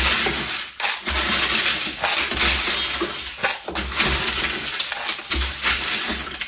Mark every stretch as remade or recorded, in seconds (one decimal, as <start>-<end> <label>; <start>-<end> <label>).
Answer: 0.0-6.5 recorded